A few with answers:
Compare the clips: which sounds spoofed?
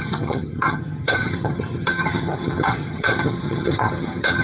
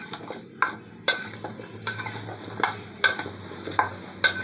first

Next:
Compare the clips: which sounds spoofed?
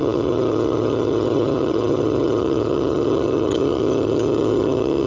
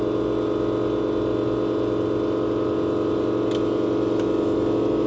first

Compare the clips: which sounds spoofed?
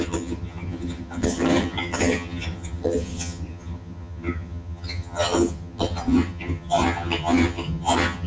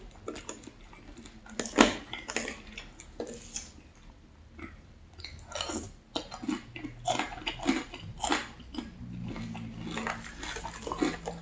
first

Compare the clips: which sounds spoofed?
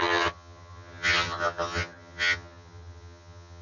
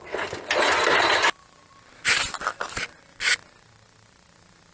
first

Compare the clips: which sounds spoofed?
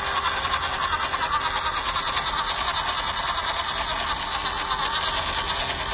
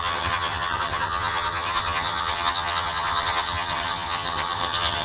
second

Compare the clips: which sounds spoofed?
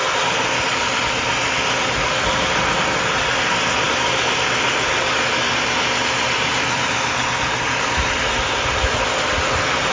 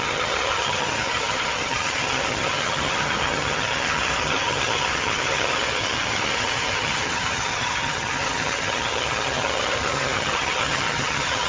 second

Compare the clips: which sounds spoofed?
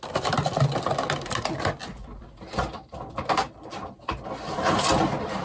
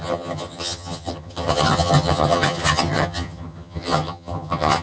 second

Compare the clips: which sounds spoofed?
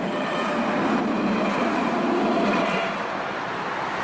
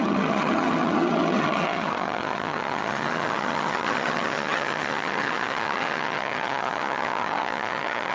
second